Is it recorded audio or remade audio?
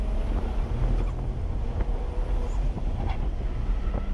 recorded